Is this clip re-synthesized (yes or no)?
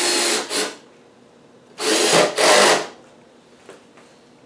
no